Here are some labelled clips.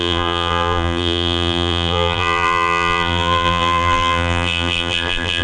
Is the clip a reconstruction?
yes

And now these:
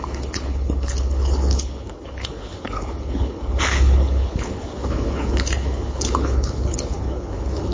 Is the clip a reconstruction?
yes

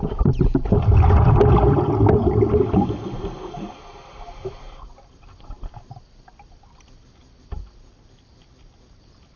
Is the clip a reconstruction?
no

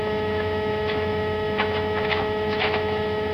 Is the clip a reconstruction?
yes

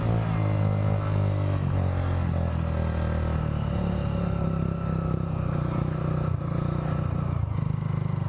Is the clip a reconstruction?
no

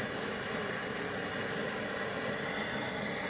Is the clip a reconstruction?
no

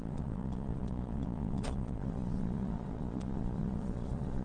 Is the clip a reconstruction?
yes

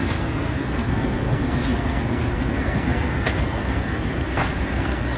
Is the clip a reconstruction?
yes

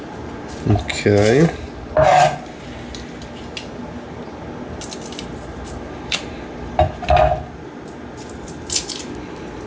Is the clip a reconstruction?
no